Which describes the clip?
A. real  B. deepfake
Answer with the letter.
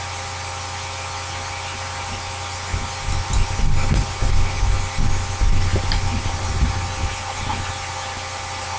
A